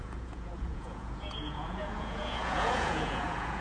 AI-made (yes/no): yes